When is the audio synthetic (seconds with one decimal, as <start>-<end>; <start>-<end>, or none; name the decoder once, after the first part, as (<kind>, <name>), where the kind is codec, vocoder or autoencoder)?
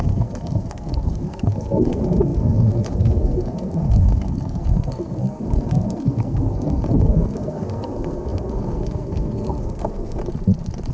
0.0-10.2 (codec, SNAC)